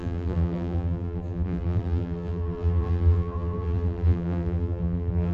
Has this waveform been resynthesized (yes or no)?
yes